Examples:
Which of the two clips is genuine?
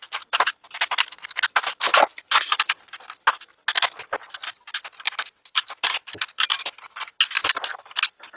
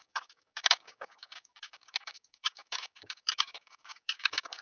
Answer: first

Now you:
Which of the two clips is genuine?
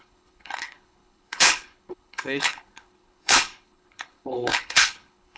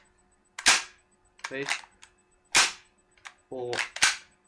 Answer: second